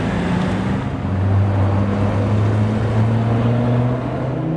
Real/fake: real